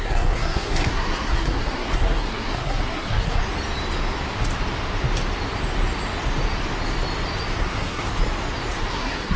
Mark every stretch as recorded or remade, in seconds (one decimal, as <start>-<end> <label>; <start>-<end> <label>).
0.0-3.4 remade; 3.4-7.6 recorded; 7.6-8.1 remade; 8.1-8.9 recorded; 8.9-9.4 remade